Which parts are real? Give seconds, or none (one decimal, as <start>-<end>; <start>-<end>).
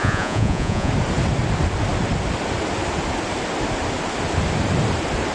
0.9-5.3